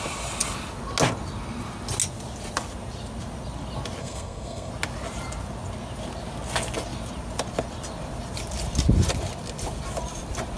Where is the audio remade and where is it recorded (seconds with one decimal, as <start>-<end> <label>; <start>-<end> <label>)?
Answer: 0.0-4.0 recorded; 4.0-4.7 remade; 4.7-10.6 recorded